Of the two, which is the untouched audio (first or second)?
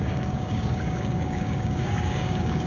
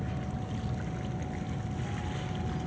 second